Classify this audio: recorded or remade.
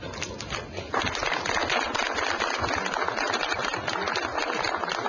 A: recorded